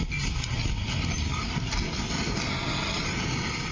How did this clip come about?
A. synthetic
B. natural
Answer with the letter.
B